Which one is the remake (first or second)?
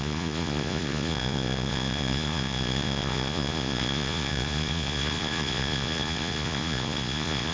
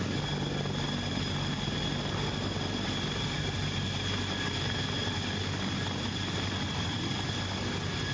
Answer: first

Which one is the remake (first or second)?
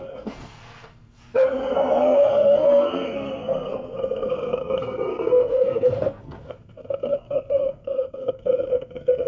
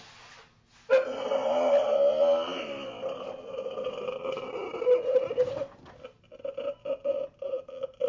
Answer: first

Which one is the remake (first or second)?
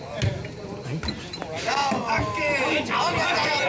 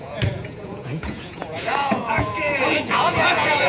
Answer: second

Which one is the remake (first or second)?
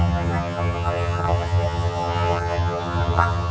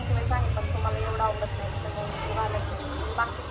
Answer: first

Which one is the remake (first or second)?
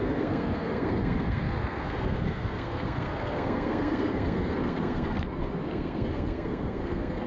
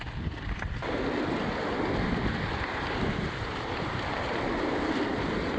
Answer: first